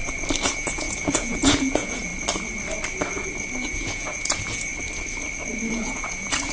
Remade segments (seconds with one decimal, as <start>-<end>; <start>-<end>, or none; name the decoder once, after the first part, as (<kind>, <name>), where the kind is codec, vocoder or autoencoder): 0.5-2.1 (vocoder, Vocos); 3.7-4.7; 5.7-6.5